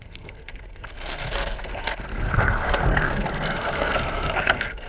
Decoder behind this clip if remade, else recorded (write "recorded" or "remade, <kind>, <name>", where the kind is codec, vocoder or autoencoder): remade, codec, SNAC